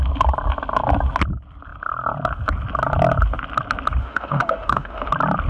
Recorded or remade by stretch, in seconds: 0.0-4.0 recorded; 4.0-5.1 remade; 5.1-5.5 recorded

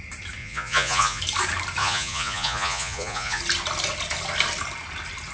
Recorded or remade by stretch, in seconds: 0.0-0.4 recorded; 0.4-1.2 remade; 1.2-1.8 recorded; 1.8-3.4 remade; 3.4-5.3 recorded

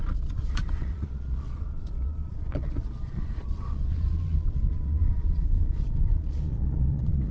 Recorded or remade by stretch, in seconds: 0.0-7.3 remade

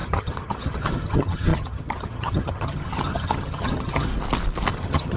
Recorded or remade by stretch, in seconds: 0.0-4.1 remade; 4.1-4.7 recorded; 4.7-5.2 remade

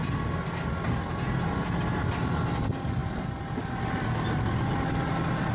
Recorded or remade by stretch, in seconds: 0.0-3.0 recorded; 3.0-4.0 remade; 4.0-5.5 recorded

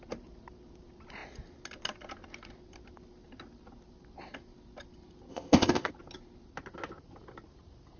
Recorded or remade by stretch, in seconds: 0.0-5.3 recorded; 5.3-5.9 remade; 5.9-8.0 recorded